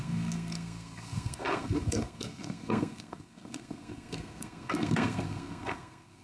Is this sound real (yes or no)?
no